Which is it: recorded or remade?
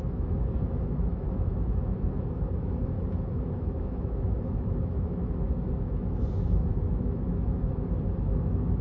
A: remade